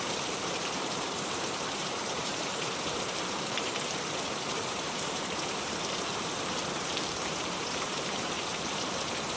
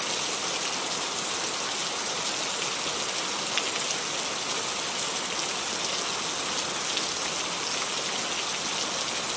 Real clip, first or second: second